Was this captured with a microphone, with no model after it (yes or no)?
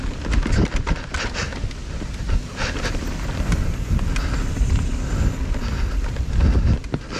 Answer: yes